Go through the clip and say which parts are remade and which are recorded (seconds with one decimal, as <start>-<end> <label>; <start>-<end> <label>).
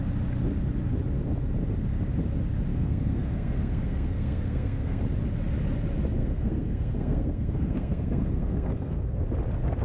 0.0-2.7 recorded; 2.7-5.0 remade; 5.0-6.2 recorded; 6.2-9.2 remade; 9.2-9.8 recorded